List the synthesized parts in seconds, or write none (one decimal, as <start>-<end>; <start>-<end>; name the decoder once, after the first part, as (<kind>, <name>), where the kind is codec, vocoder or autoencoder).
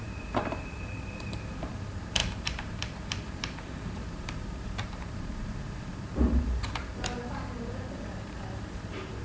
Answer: 0.0-9.2 (vocoder, BigVGAN v2)